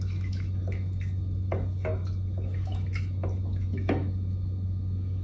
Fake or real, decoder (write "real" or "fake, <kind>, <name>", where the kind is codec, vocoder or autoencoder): fake, autoencoder, DAC-VAE